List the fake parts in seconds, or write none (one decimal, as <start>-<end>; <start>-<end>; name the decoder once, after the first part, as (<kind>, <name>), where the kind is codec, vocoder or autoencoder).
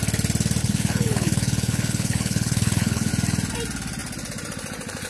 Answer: 0.6-3.1 (codec, HILCodec)